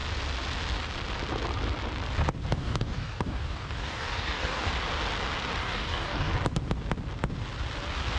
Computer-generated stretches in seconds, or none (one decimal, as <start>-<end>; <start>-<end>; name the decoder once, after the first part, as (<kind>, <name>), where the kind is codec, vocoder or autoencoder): 2.5-4.7 (codec, DAC); 5.6-6.3